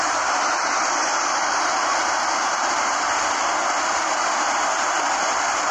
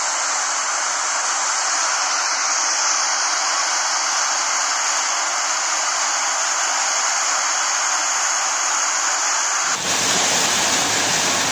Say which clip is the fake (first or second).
first